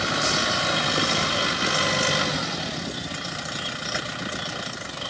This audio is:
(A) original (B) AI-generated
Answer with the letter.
A